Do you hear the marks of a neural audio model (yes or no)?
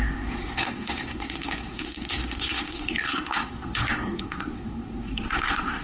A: yes